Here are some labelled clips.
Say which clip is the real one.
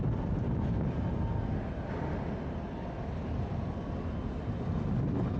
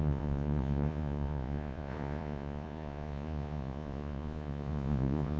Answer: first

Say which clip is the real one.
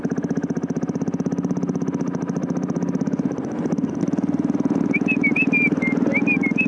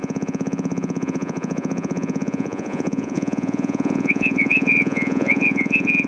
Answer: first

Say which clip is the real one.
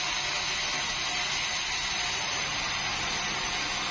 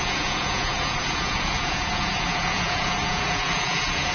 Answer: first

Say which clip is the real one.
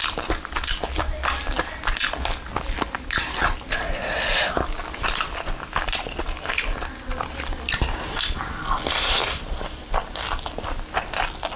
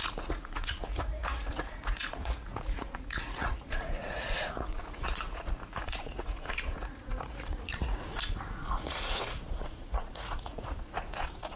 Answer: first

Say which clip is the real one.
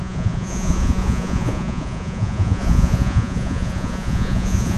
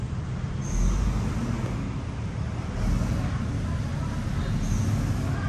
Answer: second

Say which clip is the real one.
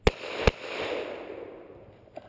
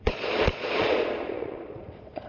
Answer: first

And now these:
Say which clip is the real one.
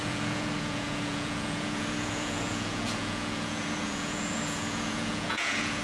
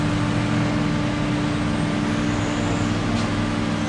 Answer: second